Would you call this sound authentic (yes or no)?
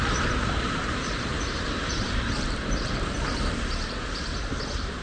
no